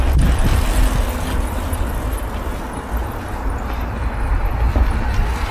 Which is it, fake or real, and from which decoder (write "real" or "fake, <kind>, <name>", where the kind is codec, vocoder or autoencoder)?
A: real